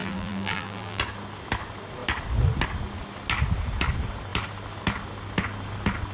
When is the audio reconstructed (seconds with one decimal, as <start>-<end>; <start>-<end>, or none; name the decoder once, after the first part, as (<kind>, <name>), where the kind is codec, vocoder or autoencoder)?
0.0-1.0 (vocoder, BigVGAN v2)